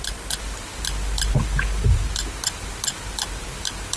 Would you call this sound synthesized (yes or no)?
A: no